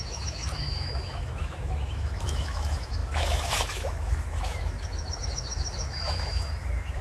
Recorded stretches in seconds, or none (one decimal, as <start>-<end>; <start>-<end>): none